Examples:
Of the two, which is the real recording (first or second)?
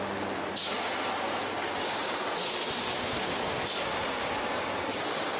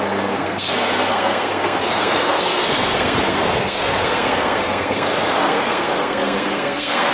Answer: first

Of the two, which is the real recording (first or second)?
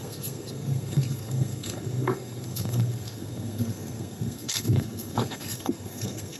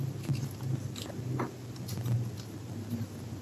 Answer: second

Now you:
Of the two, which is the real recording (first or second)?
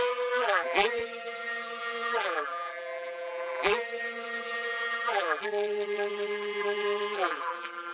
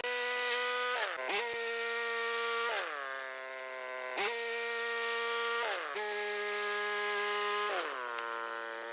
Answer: second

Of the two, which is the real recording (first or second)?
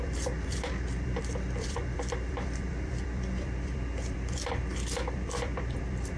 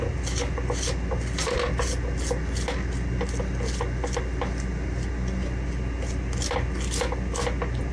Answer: second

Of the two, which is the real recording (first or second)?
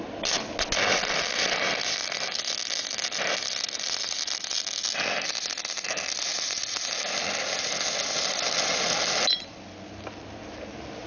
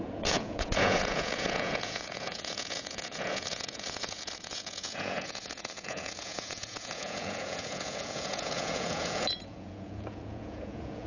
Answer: first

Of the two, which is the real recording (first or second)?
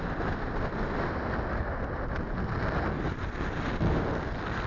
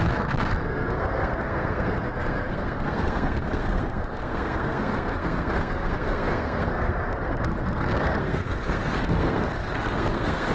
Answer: first